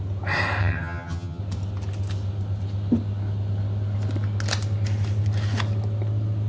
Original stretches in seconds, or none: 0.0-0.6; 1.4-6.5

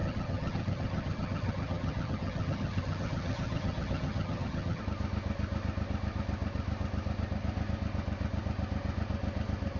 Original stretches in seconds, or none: 4.8-9.8

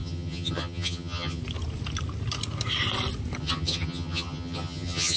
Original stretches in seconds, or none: 1.4-3.4

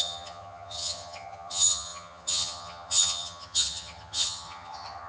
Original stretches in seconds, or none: none

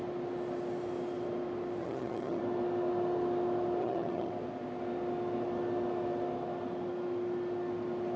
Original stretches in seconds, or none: 0.0-1.8; 2.4-3.8; 4.3-8.2